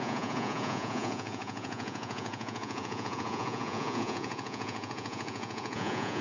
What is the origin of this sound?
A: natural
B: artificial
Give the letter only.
B